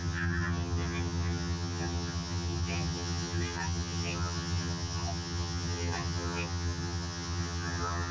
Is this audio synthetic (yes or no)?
yes